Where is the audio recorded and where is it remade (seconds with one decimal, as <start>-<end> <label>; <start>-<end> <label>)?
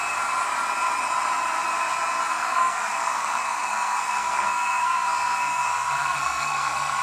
0.0-2.3 recorded; 2.3-7.0 remade